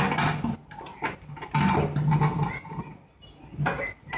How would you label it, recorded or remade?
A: recorded